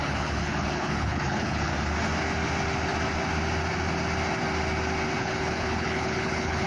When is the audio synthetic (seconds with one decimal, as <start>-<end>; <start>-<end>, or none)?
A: 0.0-1.7; 5.2-6.7